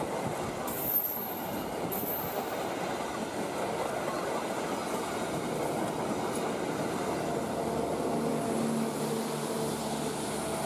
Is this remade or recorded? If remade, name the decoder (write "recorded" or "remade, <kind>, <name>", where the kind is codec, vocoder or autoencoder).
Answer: recorded